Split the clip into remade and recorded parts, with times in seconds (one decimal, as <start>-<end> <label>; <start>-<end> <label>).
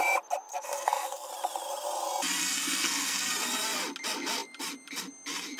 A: 0.0-0.5 recorded; 0.5-1.3 remade; 1.3-2.4 recorded; 2.4-3.3 remade; 3.3-5.6 recorded